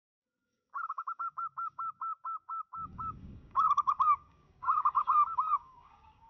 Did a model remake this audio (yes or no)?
yes